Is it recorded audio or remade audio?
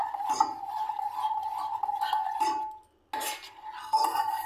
recorded